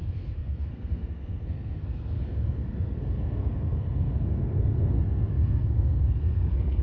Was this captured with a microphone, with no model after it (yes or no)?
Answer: no